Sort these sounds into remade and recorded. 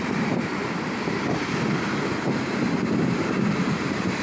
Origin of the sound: remade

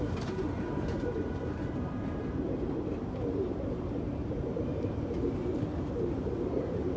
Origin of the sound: remade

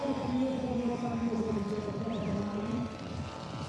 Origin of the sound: remade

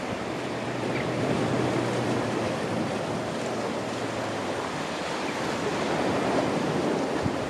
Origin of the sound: remade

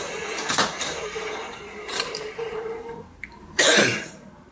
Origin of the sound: remade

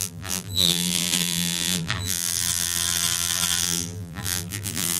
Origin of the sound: remade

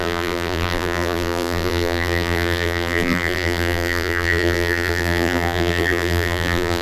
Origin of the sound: remade